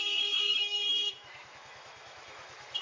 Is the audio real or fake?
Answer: fake